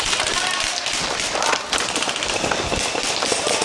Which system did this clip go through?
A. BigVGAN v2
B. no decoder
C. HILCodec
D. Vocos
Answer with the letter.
B